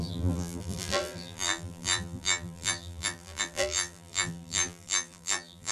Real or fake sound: fake